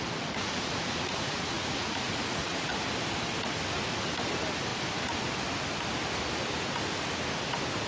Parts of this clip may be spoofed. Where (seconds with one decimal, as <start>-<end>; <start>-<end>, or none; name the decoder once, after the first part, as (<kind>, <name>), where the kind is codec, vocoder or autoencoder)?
0.4-2.7 (vocoder, Vocos)